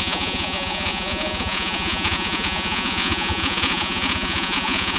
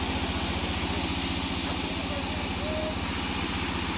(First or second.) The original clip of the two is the second